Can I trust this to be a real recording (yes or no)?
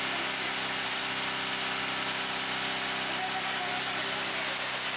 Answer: yes